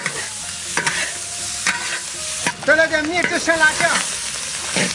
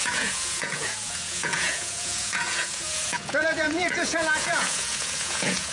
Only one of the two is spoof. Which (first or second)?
second